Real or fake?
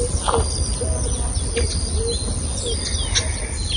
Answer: real